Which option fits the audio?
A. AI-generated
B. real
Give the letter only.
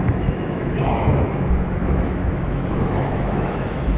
A